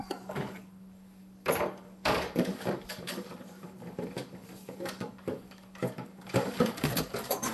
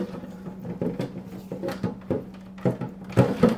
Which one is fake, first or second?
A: first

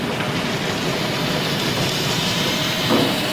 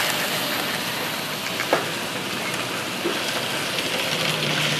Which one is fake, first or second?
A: first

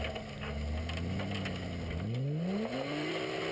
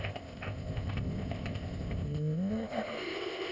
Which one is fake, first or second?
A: second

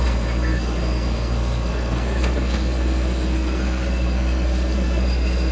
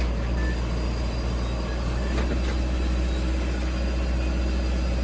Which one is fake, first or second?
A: first